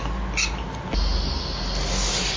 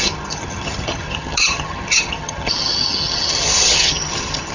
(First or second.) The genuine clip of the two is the first